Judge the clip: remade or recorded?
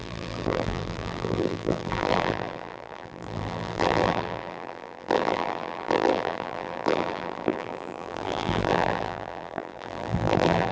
remade